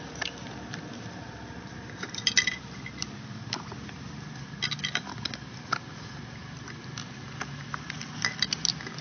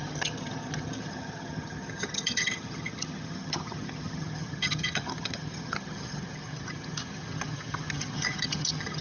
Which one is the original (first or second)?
first